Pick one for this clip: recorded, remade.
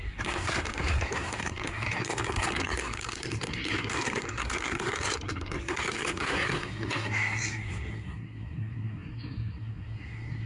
remade